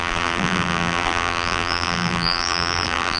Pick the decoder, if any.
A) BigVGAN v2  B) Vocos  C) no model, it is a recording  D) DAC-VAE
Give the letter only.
A